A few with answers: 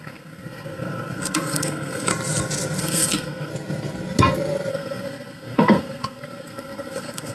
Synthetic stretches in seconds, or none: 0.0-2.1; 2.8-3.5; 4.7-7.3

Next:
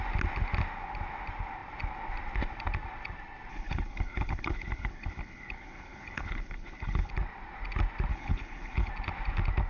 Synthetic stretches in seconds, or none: 3.5-7.1; 8.1-8.9

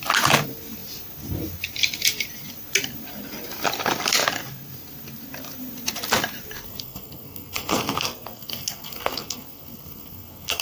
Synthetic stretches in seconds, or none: 6.6-10.6

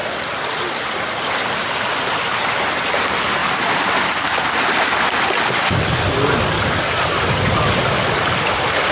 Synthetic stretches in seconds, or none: none